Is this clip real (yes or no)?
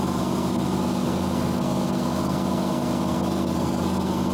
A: no